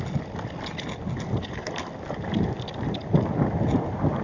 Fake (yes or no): no